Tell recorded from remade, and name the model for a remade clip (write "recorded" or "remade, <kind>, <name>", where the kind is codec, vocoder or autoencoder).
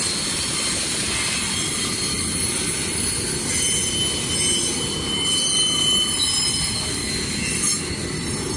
recorded